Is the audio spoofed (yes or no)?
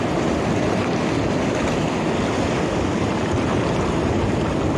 no